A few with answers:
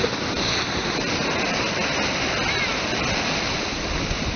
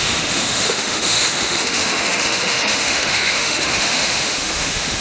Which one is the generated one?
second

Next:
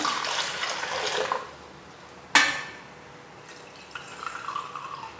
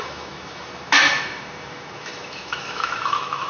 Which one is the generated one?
second